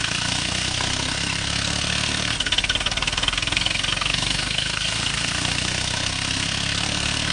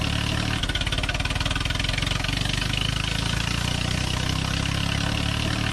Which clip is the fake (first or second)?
first